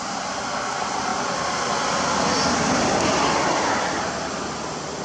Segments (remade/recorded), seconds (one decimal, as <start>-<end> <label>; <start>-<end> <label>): 0.0-5.0 recorded